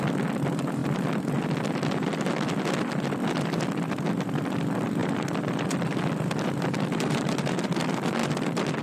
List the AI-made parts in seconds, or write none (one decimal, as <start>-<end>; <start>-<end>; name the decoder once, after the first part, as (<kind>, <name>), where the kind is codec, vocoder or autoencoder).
5.0-6.3 (vocoder, BigVGAN v2)

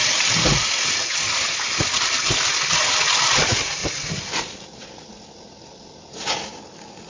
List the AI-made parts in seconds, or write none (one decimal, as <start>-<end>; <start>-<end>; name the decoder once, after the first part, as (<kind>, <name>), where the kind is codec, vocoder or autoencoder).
3.8-6.1 (vocoder, BigVGAN v2)

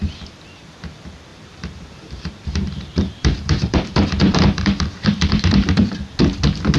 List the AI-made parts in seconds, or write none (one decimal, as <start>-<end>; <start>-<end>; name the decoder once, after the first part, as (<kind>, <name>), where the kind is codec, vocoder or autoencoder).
1.3-5.4 (vocoder, BigVGAN v2)

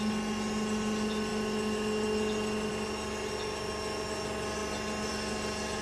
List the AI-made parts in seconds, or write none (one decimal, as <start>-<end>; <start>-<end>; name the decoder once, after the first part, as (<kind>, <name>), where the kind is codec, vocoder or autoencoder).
none